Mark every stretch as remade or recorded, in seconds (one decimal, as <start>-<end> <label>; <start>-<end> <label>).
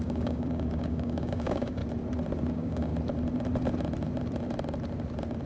0.0-1.8 remade; 1.8-2.5 recorded; 2.5-2.9 remade; 2.9-5.5 recorded